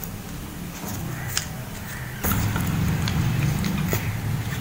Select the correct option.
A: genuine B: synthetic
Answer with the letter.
A